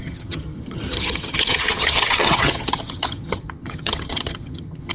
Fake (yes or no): yes